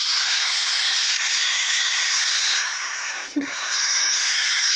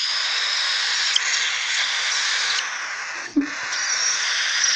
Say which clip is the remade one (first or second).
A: first